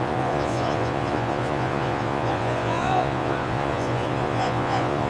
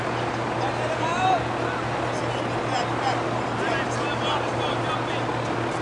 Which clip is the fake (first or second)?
first